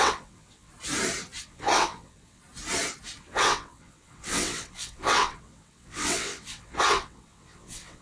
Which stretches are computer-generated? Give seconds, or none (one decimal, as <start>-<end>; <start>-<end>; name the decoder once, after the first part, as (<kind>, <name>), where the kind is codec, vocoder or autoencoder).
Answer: 0.0-0.7 (vocoder, WaveNeXt); 1.4-2.4; 3.2-8.0